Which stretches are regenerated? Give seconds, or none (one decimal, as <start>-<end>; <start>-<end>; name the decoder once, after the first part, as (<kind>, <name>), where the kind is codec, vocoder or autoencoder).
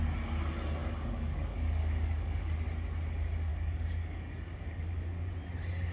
0.8-2.5 (codec, DAC); 3.5-5.3